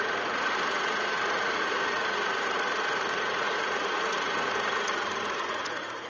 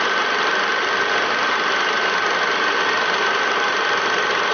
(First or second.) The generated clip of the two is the first